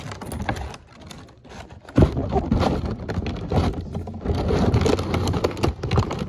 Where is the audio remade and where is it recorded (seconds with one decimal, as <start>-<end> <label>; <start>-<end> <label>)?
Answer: 0.0-6.3 recorded